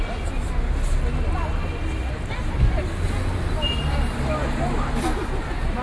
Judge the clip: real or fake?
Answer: real